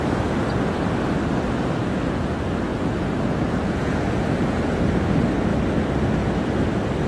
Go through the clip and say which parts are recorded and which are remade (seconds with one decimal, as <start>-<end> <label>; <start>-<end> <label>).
0.0-1.8 recorded; 1.8-2.3 remade; 2.3-2.7 recorded; 2.7-4.8 remade; 4.8-7.1 recorded